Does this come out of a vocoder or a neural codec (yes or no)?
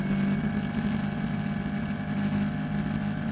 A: no